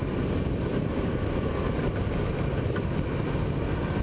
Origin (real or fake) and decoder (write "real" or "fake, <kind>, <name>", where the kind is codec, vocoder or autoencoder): real